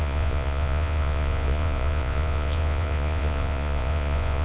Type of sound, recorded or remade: remade